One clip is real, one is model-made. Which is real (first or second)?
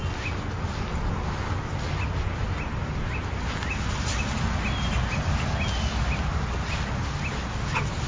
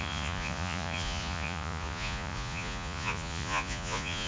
first